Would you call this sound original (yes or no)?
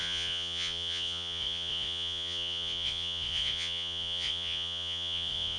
no